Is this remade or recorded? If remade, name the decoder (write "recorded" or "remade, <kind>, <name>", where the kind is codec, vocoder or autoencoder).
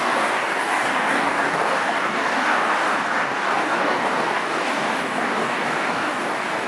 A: remade, codec, DAC